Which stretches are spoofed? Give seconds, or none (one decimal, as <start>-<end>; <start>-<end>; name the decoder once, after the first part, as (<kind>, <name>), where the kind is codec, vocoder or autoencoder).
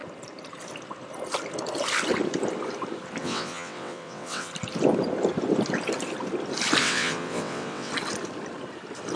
3.2-4.5 (vocoder, WaveNeXt); 6.8-7.9